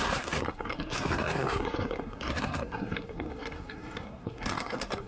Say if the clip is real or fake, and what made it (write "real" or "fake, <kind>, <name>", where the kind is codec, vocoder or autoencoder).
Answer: fake, codec, SNAC